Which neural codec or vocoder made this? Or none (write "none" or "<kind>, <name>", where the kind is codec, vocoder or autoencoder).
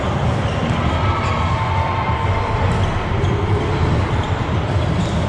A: none